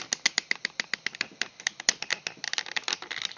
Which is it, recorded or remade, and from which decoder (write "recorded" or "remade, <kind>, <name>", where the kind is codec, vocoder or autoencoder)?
recorded